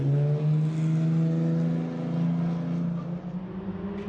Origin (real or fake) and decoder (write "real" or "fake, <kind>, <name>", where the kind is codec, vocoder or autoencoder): real